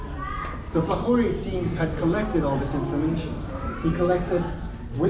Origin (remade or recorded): recorded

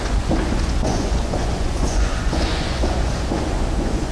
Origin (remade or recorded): remade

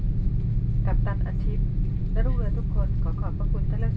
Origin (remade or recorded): recorded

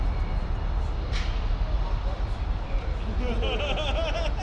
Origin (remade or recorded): recorded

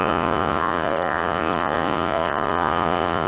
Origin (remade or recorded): remade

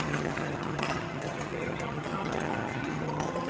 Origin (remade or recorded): remade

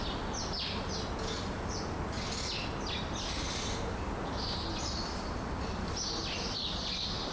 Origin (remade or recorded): recorded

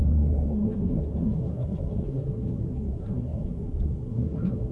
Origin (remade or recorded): remade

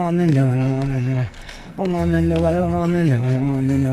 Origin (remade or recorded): remade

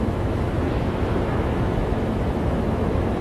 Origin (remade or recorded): remade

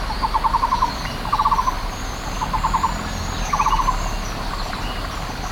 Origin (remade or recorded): recorded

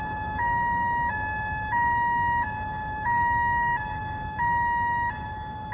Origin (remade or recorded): remade